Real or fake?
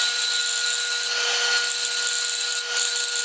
real